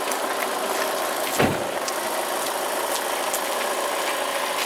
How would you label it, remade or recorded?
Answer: recorded